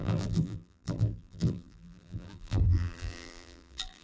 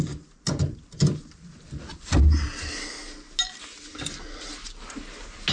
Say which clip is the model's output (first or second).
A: first